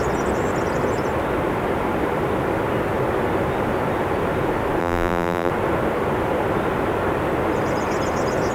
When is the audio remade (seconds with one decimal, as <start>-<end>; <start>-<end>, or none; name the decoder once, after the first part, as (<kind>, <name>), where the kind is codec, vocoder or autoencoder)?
4.8-5.5 (vocoder, BigVGAN v2)